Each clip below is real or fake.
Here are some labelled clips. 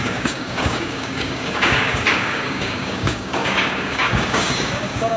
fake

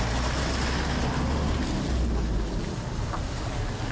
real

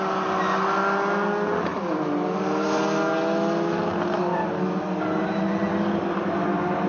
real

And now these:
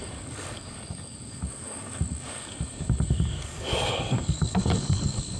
fake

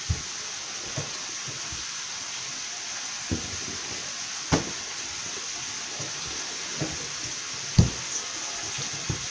real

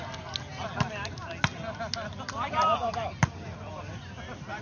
real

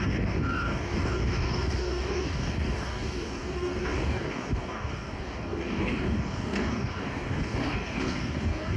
fake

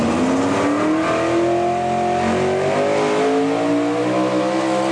real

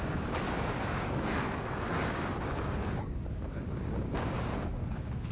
fake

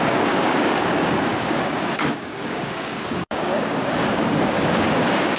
fake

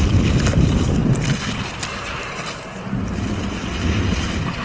real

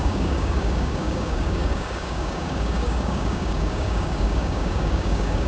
fake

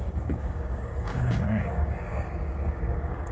fake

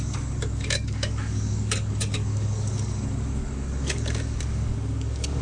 fake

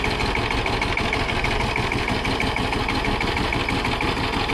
real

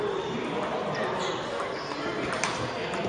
real